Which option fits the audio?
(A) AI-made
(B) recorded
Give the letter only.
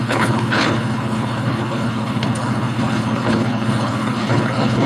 A